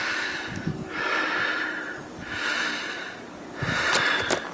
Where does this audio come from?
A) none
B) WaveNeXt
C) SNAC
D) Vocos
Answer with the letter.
A